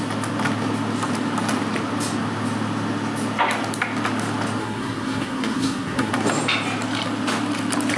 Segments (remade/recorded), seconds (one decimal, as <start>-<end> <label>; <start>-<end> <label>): 0.0-4.6 recorded; 4.6-6.1 remade; 6.1-8.0 recorded